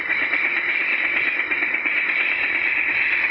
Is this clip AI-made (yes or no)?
no